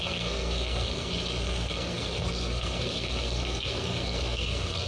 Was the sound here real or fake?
fake